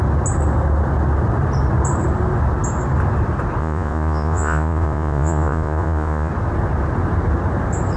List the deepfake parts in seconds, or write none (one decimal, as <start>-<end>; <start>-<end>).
3.6-6.3